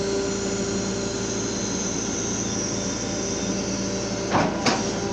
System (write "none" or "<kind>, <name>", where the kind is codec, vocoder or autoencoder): none